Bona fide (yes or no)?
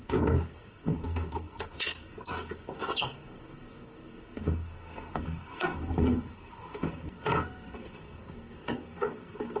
no